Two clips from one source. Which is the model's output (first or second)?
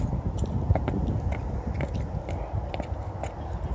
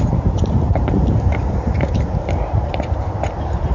second